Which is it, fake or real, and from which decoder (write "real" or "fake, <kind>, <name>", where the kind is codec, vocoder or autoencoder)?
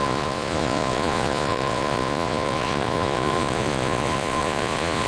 fake, vocoder, Vocos